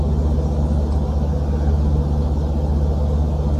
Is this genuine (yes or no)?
yes